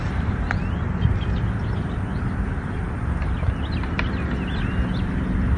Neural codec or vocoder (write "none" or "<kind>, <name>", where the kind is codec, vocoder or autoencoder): none